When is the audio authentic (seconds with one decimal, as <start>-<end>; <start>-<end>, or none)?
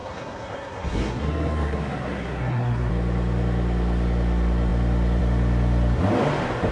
2.9-6.7